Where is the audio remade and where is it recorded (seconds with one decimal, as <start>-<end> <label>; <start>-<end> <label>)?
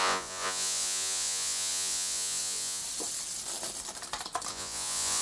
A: 0.0-2.8 remade; 2.8-4.5 recorded; 4.5-5.2 remade